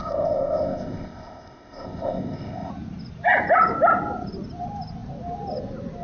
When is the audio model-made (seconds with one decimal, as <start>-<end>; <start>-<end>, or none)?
0.0-2.7